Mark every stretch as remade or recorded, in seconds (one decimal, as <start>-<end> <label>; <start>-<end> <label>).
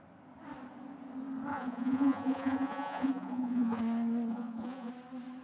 0.0-1.5 recorded; 1.5-3.8 remade; 3.8-4.3 recorded; 4.3-4.9 remade; 4.9-5.4 recorded